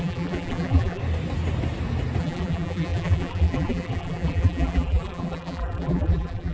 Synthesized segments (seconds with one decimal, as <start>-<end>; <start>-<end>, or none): 0.0-1.0; 2.2-6.5